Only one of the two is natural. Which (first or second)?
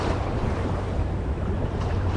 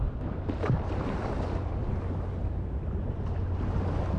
second